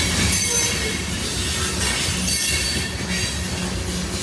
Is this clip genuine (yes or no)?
yes